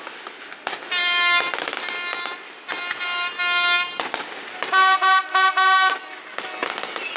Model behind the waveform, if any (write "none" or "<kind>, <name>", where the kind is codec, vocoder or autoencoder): none